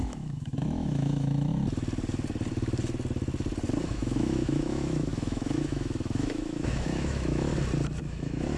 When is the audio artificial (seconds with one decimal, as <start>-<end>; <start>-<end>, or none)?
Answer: 0.0-1.5; 3.8-7.5; 8.0-8.6